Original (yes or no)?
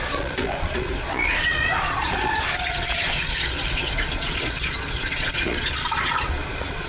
no